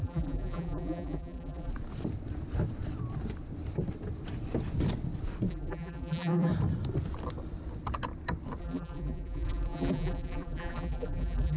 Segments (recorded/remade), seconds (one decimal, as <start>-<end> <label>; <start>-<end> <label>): 0.0-1.7 remade; 1.7-5.5 recorded; 5.5-6.5 remade; 6.5-8.6 recorded; 8.6-11.6 remade